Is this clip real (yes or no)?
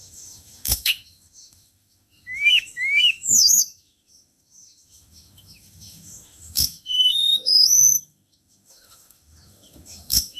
no